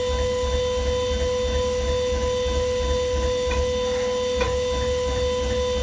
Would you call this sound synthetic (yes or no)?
no